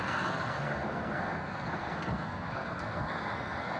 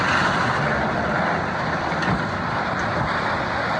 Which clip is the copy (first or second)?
first